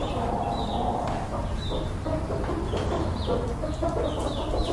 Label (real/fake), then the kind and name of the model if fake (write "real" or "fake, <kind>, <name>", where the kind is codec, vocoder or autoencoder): real